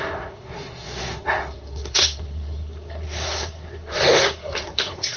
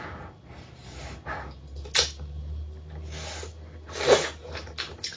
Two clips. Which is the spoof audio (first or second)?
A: first